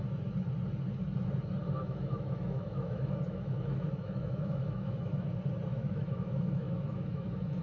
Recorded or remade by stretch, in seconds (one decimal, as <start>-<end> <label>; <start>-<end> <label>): 0.0-1.8 recorded; 1.8-5.3 remade; 5.3-5.7 recorded; 5.7-7.6 remade